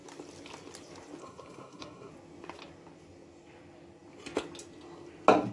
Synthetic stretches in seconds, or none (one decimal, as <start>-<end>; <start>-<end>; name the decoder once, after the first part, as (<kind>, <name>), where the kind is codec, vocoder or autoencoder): 1.2-2.1 (codec, SNAC)